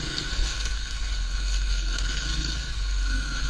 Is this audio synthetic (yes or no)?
yes